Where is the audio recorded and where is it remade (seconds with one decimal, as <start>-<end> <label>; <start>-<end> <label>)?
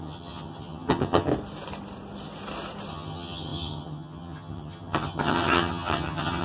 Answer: 0.0-1.3 remade; 1.3-2.9 recorded; 2.9-6.4 remade